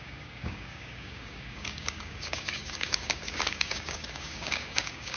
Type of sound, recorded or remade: remade